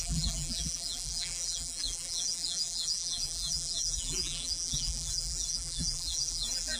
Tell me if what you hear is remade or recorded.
remade